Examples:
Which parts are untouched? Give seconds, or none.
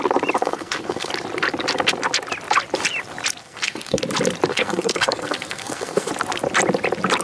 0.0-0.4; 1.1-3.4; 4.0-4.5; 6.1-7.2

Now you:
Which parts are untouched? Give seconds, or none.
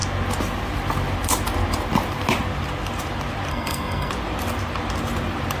0.0-3.5; 4.1-5.6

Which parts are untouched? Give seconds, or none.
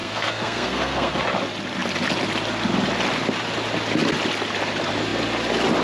1.1-5.8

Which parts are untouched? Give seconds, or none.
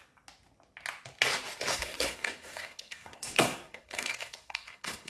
0.0-1.7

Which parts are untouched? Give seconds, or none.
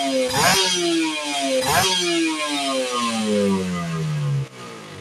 0.0-5.0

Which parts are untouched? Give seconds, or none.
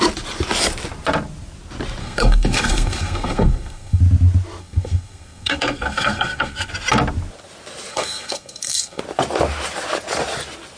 0.0-2.0; 4.0-4.6; 6.7-7.9; 9.0-10.8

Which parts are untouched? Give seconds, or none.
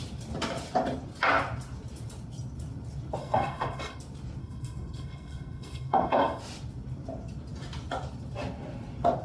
0.0-3.2; 4.0-4.4; 6.4-9.2